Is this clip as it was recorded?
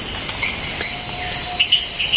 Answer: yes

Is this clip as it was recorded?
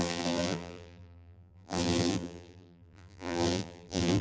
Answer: no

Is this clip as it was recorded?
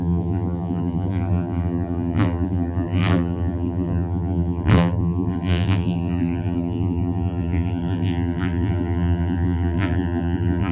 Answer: no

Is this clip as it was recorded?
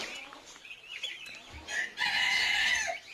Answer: yes